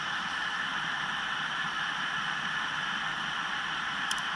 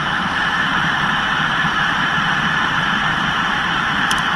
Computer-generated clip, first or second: second